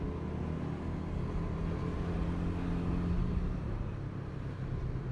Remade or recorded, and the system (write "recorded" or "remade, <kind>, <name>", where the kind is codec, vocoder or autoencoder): recorded